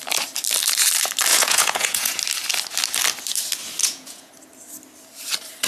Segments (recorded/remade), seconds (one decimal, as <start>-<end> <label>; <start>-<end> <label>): 0.0-1.3 recorded; 1.3-2.2 remade; 2.2-3.8 recorded; 3.8-4.3 remade; 4.3-5.7 recorded